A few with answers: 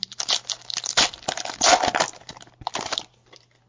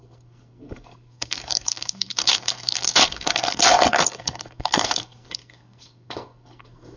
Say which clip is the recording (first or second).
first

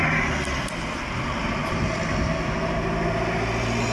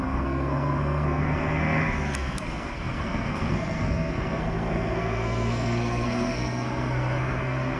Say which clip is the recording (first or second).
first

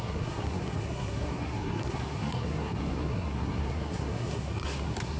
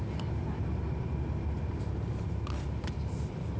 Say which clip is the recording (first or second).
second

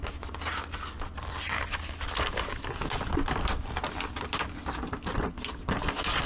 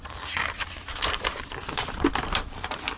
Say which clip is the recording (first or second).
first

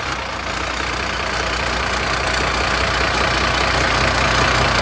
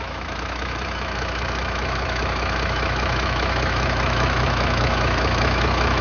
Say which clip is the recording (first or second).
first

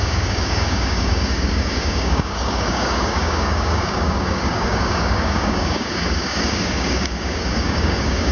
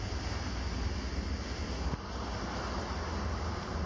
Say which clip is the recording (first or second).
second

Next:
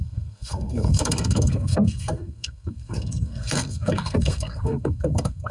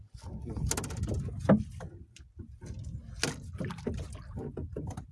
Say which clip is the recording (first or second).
second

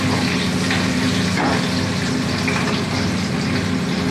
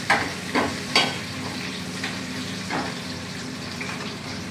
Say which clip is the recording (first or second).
first